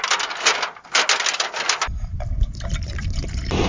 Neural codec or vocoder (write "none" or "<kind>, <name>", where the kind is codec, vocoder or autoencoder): none